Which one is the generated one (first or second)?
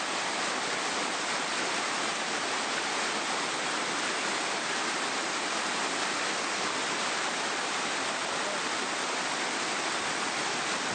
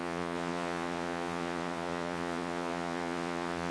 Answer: second